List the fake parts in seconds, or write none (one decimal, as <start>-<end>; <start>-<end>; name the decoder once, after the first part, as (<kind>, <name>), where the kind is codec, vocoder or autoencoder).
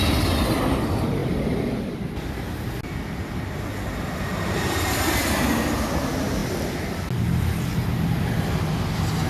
none